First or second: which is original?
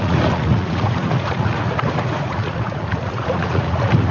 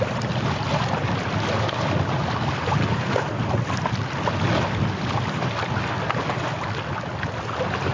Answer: second